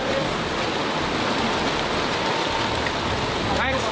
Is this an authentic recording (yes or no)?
yes